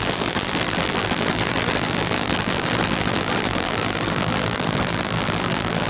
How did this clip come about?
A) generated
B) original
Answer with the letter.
A